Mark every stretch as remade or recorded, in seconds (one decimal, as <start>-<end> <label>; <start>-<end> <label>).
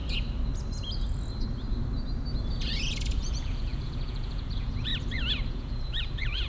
0.0-2.5 recorded; 2.5-4.9 remade; 4.9-5.5 recorded; 5.5-6.5 remade